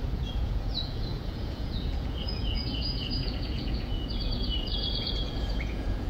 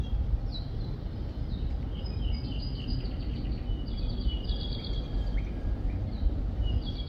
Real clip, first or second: second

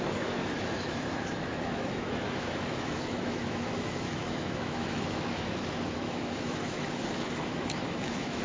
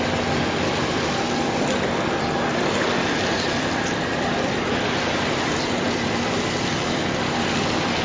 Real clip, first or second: second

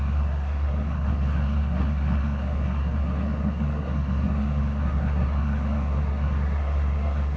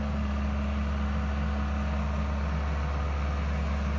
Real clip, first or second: second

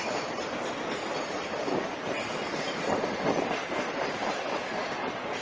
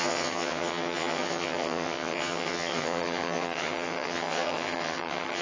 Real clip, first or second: first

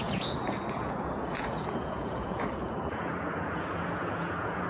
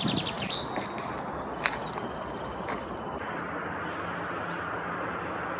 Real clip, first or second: second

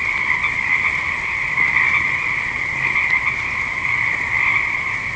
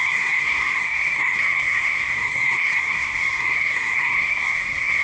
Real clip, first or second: first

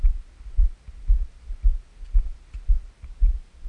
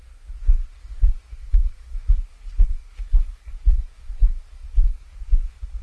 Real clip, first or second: first